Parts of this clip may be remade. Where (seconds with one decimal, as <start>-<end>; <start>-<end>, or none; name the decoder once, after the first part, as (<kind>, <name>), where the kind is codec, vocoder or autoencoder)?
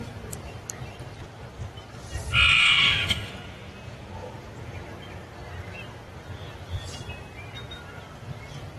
2.5-3.3 (autoencoder, DAC-VAE)